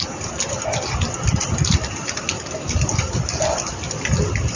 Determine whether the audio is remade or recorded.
remade